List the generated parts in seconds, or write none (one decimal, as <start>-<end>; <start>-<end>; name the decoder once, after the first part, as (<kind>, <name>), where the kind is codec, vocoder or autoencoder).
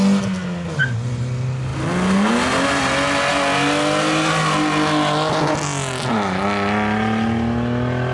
none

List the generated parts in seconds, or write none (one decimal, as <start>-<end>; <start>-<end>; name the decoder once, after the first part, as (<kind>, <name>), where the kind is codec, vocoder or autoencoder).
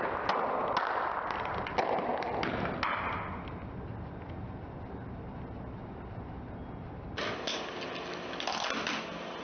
none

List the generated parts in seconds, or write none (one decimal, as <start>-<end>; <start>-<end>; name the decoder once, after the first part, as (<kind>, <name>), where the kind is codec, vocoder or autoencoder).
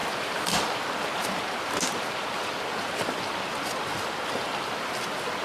none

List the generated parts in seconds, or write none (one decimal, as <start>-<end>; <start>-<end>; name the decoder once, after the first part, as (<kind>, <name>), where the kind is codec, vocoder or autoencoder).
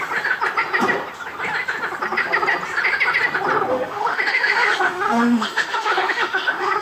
3.7-6.8 (autoencoder, DAC-VAE)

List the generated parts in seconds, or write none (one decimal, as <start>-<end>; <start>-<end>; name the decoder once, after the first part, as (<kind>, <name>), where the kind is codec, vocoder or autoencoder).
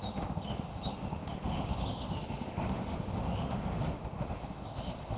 0.0-5.2 (autoencoder, DAC-VAE)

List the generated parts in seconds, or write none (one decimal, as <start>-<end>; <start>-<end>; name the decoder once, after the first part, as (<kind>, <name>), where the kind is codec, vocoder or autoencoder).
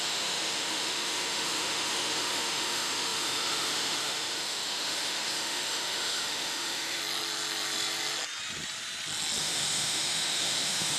0.0-7.0 (autoencoder, DAC-VAE); 9.4-11.0